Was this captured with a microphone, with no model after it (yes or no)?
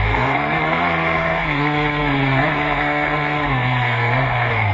no